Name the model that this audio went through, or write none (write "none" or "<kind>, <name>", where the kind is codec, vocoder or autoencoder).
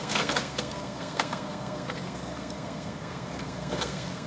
codec, SNAC